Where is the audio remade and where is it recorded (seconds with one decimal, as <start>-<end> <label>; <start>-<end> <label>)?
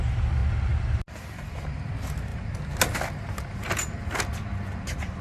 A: 0.0-5.2 recorded